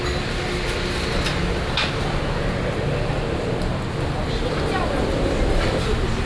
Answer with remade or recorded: recorded